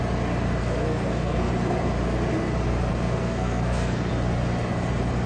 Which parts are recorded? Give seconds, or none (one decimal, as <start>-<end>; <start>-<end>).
0.0-0.6; 1.5-2.9; 4.1-5.3